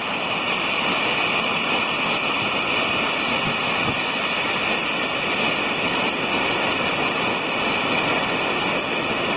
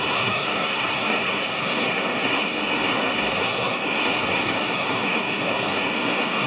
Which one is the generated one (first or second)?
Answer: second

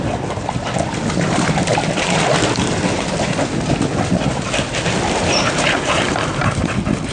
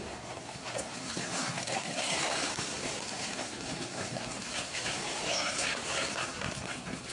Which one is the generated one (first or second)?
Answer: second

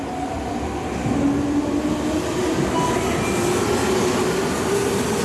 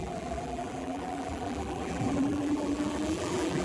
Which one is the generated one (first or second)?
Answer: second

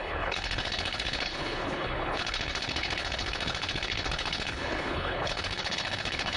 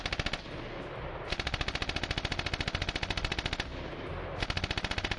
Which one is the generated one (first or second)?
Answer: first